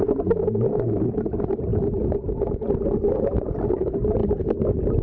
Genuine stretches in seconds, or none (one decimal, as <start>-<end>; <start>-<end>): 0.0-5.0